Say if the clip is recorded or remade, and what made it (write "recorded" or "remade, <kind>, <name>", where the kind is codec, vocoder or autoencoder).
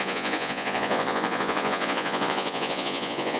remade, vocoder, Vocos